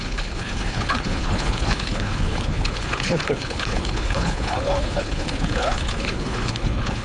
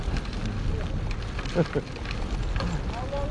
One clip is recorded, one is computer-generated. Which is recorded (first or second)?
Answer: second